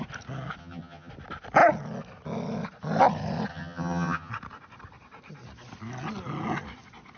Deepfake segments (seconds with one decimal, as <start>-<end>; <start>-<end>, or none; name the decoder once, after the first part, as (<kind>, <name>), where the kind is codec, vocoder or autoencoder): 0.6-1.1 (vocoder, HiFi-GAN); 3.5-4.3

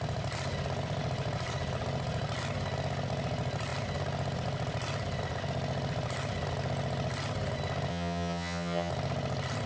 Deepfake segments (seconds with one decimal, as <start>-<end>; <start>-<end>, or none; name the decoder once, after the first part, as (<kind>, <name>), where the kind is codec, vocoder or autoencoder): 7.9-8.9 (vocoder, HiFi-GAN)

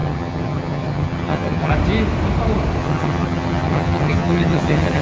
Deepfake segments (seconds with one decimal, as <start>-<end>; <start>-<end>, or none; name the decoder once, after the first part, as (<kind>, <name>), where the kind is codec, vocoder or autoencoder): 0.0-1.7 (vocoder, HiFi-GAN); 2.8-5.0

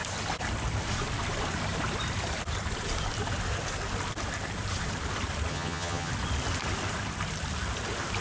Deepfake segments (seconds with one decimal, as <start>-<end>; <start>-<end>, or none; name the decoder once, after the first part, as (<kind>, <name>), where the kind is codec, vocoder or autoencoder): 5.5-6.1 (vocoder, HiFi-GAN)

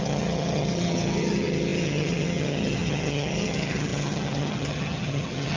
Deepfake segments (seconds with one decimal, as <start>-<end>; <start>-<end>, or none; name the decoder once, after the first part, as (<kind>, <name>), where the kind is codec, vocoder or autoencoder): 0.0-5.6 (vocoder, HiFi-GAN)

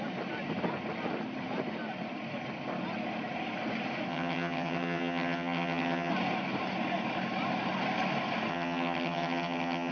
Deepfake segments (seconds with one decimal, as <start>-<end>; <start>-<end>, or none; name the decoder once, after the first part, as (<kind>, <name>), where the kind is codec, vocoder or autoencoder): 4.1-6.1 (vocoder, HiFi-GAN); 8.5-9.9

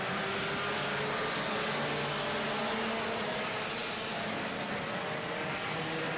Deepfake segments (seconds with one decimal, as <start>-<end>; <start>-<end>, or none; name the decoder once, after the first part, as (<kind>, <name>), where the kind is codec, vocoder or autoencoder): none

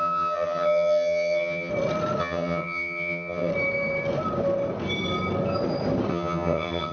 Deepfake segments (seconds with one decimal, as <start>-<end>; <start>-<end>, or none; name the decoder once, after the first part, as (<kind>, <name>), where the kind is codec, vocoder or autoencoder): 0.0-1.7 (vocoder, HiFi-GAN); 2.2-3.5; 6.1-6.9